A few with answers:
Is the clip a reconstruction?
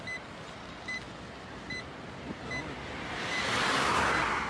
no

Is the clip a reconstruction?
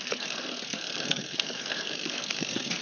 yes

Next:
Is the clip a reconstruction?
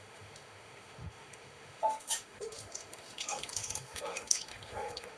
yes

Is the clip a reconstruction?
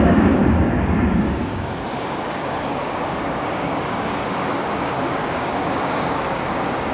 yes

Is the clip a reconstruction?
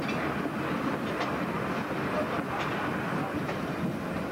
no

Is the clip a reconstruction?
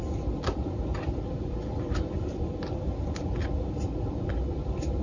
no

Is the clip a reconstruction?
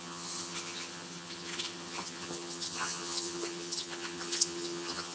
yes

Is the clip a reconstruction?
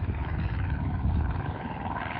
yes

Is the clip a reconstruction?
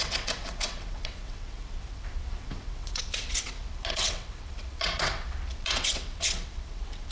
yes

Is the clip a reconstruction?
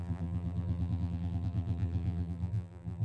yes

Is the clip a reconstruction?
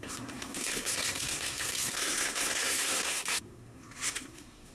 yes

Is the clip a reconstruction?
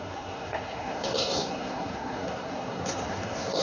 yes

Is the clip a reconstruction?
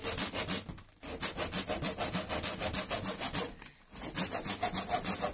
no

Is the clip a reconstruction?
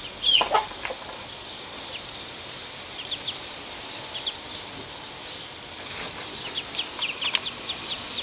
yes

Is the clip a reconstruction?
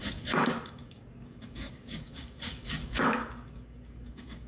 yes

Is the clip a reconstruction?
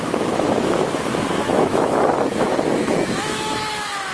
yes